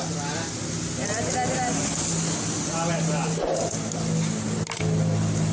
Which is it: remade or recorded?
recorded